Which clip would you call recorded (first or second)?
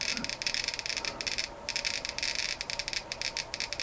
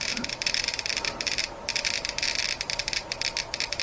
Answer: first